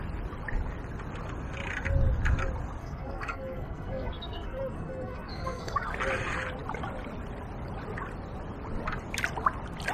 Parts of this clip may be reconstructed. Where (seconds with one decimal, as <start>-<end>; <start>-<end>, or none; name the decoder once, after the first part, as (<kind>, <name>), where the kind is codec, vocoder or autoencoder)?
2.8-5.9 (codec, SNAC)